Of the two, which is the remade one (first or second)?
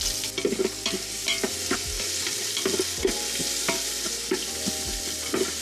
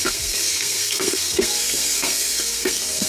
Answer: second